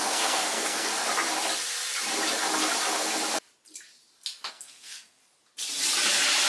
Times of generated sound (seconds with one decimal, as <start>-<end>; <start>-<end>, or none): 0.0-0.9; 4.5-5.2